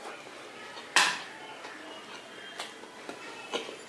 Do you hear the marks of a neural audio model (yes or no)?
no